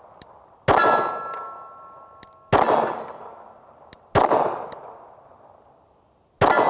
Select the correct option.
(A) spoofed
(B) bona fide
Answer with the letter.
B